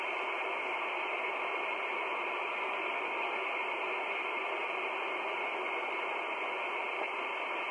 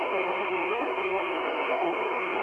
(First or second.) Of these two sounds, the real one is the first